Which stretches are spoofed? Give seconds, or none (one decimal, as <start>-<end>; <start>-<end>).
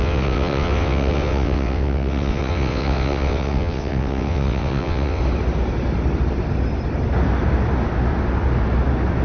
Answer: 0.0-5.2